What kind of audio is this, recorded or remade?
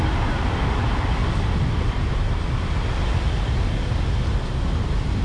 recorded